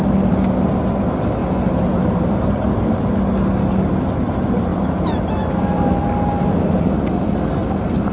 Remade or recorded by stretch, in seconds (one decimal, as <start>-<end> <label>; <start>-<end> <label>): 0.0-1.4 recorded; 1.4-3.0 remade; 3.0-8.1 recorded